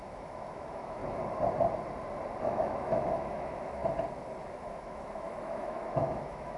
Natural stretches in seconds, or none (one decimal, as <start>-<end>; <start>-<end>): 1.0-2.4; 3.8-4.5